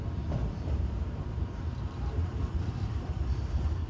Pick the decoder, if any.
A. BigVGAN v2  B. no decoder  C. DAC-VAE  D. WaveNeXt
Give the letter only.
A